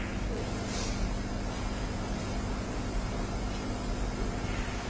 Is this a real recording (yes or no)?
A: yes